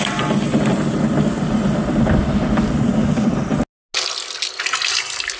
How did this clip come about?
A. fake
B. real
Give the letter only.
B